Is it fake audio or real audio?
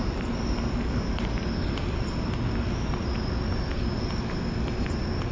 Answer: real